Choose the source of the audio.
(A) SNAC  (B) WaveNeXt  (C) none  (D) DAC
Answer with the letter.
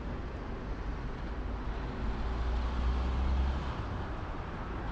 C